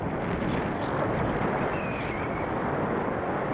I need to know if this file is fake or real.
real